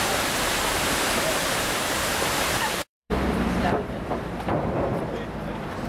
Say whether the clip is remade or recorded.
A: remade